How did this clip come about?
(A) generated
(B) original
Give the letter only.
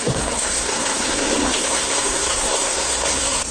A